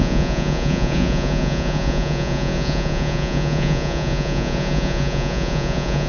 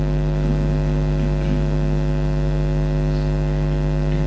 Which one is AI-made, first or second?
first